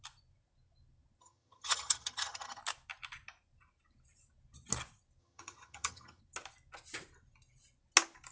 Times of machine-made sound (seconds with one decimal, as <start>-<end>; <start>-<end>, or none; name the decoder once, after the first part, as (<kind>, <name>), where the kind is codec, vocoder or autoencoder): 1.2-2.6 (vocoder, HiFi-GAN); 5.2-6.2